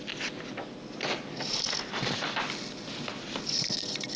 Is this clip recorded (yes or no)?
yes